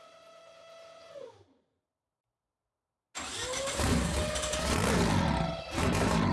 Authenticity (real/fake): real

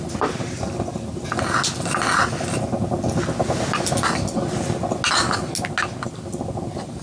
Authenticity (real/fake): real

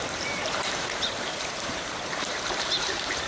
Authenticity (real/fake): fake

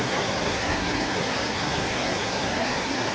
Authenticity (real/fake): fake